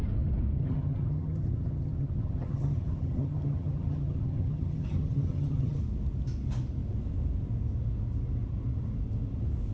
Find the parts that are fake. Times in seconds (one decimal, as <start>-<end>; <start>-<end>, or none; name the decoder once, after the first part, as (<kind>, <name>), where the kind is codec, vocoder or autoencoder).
0.6-5.8 (vocoder, HiFi-GAN)